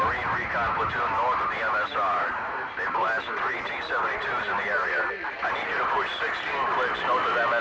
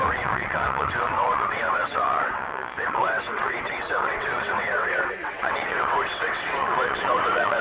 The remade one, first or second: second